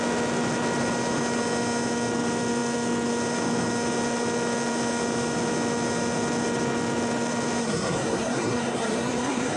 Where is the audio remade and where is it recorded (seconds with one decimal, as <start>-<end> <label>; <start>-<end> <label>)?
0.0-7.6 recorded; 7.6-9.6 remade